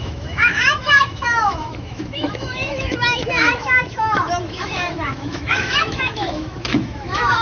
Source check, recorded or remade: remade